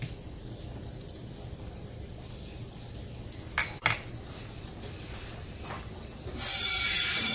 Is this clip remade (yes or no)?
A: no